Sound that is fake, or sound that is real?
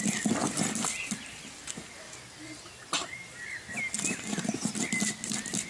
real